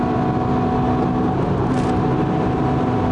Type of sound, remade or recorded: recorded